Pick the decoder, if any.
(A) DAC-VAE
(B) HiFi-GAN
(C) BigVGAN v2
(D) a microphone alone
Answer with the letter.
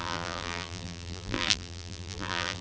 C